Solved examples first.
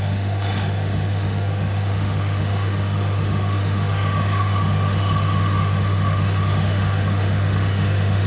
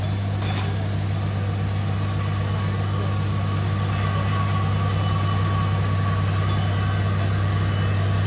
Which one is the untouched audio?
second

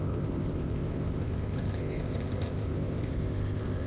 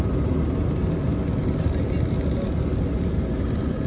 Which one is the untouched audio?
second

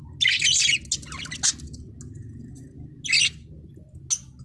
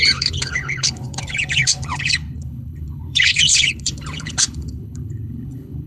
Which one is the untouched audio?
first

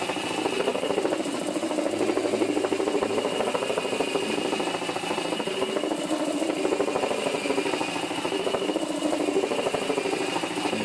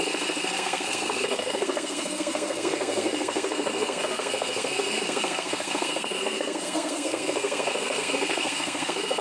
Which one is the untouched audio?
first